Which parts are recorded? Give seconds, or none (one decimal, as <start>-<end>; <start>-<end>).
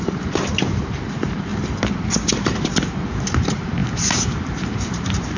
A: 1.5-2.3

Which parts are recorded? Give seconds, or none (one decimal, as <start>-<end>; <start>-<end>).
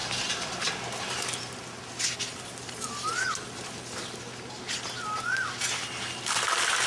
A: 0.7-6.9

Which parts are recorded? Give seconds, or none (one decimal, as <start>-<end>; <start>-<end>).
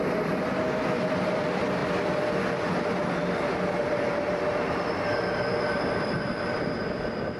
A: 0.0-7.4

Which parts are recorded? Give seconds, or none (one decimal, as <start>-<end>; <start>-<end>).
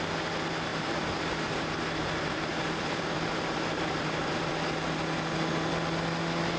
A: 0.0-0.7; 4.5-6.6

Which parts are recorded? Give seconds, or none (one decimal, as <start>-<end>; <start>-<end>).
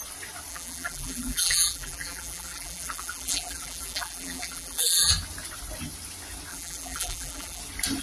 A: 0.0-0.5; 5.1-6.5; 7.6-8.0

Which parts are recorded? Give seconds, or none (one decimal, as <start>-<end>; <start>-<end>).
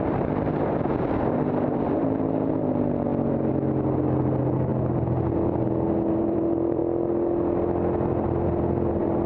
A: 3.1-4.2; 4.7-6.1; 6.8-8.9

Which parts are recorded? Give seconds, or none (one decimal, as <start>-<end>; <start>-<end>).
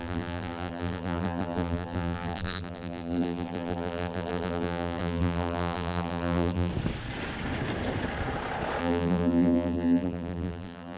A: 6.7-8.8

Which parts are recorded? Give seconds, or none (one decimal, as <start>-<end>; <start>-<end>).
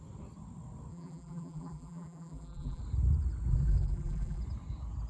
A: 0.0-0.9; 2.8-3.5; 4.4-5.1